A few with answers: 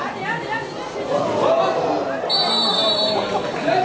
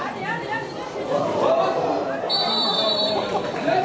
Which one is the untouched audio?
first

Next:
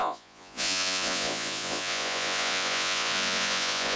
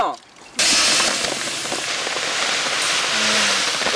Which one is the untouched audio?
second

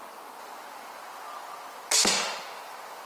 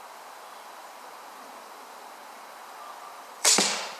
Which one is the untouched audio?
first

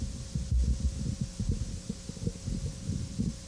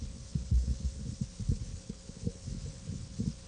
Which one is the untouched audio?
first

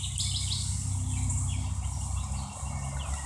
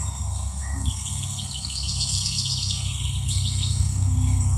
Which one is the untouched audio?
first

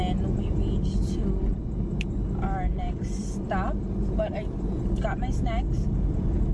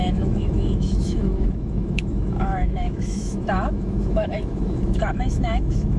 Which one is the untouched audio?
first